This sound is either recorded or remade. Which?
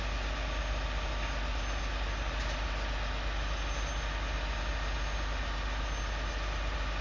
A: recorded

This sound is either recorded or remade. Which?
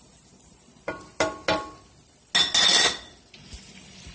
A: recorded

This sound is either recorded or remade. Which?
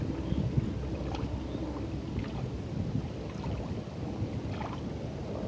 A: recorded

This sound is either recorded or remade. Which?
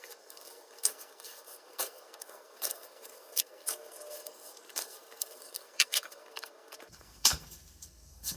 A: remade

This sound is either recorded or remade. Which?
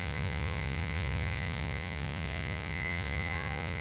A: remade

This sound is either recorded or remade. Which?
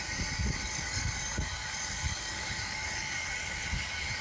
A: remade